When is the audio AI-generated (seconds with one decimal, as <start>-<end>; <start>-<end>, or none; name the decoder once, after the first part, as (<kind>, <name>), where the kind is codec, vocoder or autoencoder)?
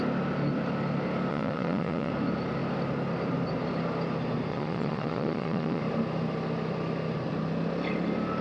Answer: 1.3-2.1 (vocoder, Vocos); 4.5-5.8